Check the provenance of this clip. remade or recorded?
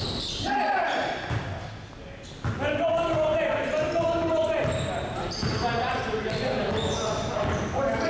recorded